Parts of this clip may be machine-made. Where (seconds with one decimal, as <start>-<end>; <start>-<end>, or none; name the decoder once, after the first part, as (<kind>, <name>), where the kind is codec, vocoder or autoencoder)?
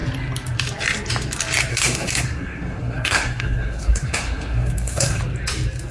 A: 1.7-5.2 (codec, SNAC)